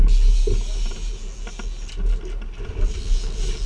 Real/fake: real